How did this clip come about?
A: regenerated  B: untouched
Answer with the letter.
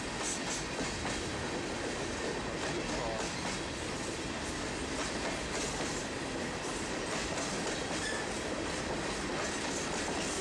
B